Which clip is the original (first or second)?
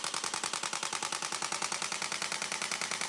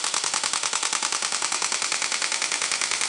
first